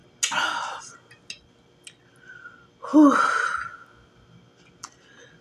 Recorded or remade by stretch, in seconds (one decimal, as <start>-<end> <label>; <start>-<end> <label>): 0.0-5.4 recorded